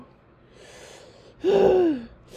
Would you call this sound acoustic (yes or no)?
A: yes